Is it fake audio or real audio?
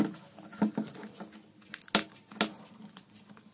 real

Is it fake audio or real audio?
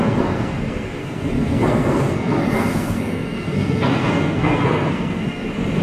fake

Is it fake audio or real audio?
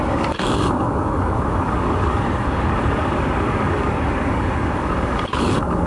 fake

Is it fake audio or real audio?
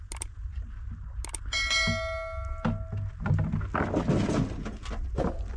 real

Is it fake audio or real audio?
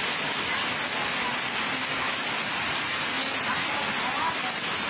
real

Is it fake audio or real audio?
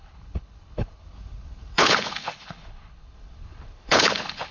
fake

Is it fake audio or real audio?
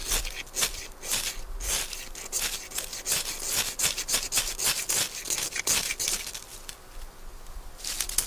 real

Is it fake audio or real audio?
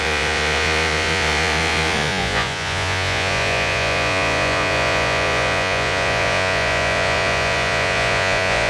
fake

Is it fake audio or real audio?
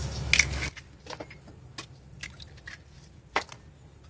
real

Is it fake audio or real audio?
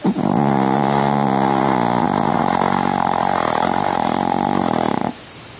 real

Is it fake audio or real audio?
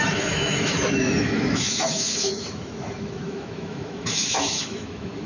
fake